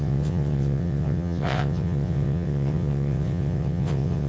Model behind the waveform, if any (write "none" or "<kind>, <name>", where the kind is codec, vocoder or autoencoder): vocoder, WaveNeXt